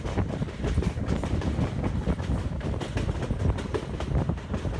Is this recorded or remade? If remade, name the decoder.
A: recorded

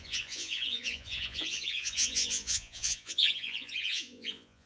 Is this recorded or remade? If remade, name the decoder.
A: remade, vocoder, Vocos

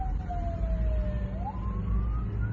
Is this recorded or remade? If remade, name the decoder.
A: recorded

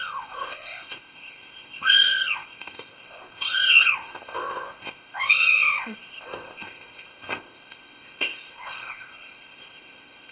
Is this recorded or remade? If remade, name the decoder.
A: remade, codec, ZipCodec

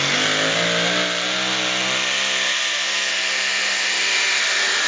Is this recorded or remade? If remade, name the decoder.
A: recorded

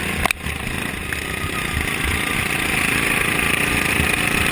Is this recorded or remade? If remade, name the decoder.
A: recorded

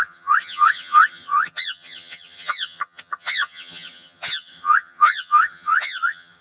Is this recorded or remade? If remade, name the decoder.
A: remade, vocoder, HiFi-GAN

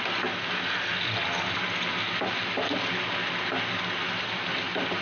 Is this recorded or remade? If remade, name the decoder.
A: recorded